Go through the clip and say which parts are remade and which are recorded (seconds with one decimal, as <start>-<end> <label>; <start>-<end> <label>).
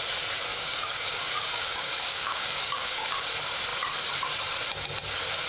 0.0-0.5 recorded; 0.5-3.2 remade; 3.2-5.5 recorded